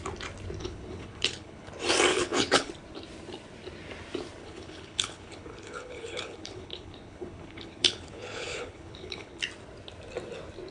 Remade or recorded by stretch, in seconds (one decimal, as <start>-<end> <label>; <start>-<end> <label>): 0.0-0.6 recorded; 0.6-1.7 remade; 1.7-2.1 recorded; 2.1-2.7 remade; 2.7-4.4 recorded; 4.4-9.4 remade; 9.4-10.7 recorded